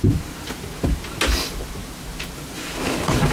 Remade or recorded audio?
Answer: recorded